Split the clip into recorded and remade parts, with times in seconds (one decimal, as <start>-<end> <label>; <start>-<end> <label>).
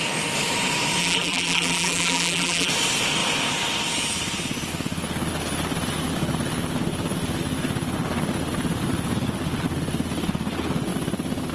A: 0.0-1.0 recorded; 1.0-2.7 remade; 2.7-11.5 recorded